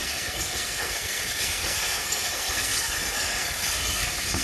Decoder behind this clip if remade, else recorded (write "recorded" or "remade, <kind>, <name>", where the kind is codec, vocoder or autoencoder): remade, codec, SNAC